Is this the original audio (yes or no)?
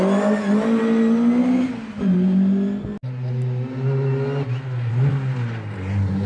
yes